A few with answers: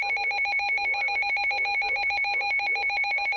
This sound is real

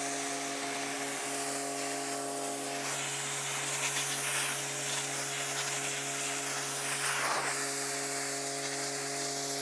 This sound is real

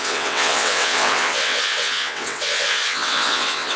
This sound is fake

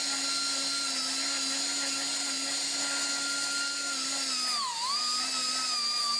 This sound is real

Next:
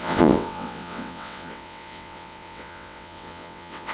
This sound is fake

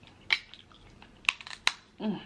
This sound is real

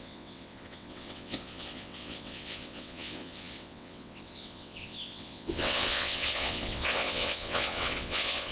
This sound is fake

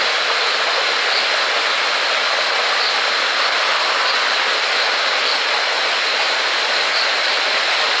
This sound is real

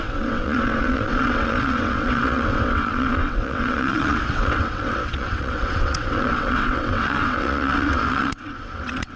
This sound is fake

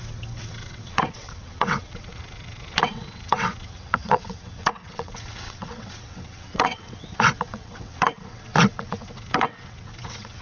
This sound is fake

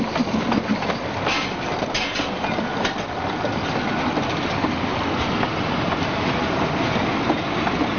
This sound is real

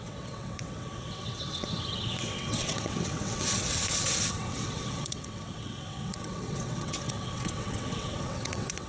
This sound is fake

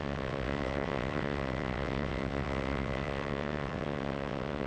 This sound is fake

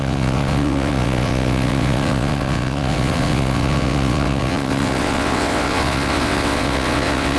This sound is fake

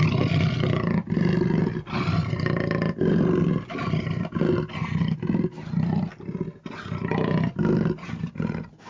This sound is real